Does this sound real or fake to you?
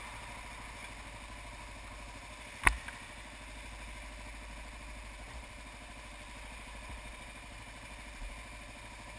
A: real